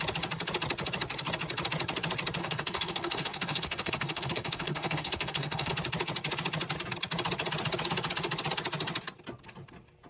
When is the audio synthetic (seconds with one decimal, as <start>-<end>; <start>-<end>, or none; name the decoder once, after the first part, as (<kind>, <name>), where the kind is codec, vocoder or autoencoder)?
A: 2.4-5.7 (codec, SNAC)